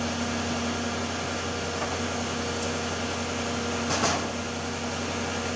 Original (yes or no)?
yes